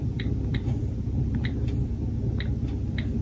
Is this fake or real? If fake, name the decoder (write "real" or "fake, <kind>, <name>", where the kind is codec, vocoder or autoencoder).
fake, vocoder, BigVGAN v2